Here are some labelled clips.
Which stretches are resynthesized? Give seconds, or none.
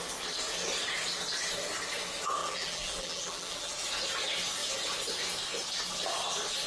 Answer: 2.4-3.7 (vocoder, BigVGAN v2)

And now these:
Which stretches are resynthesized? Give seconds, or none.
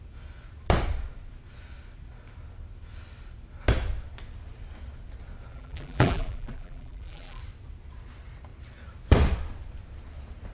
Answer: 5.5-7.4 (vocoder, BigVGAN v2)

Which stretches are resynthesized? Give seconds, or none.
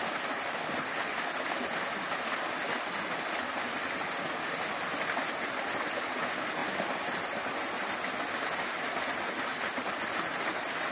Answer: none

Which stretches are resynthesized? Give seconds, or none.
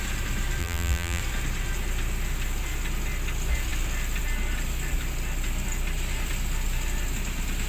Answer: 0.6-1.2 (vocoder, BigVGAN v2)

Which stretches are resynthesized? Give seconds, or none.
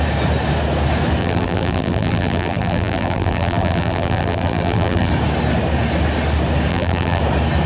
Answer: 1.2-5.1 (vocoder, BigVGAN v2); 6.7-7.2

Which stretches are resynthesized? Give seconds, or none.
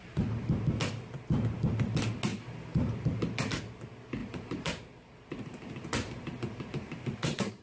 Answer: 2.3-2.9 (vocoder, BigVGAN v2); 4.2-7.6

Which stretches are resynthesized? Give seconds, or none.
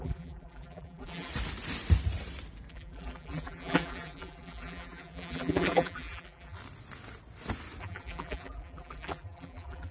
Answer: 0.0-1.3 (vocoder, BigVGAN v2); 2.7-6.6; 7.8-9.9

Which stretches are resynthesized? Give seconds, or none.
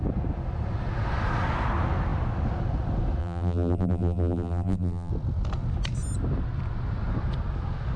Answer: 3.2-5.1 (vocoder, BigVGAN v2)